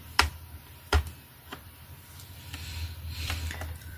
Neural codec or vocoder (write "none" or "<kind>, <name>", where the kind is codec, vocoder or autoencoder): vocoder, BigVGAN v2